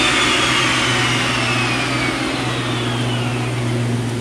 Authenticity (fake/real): real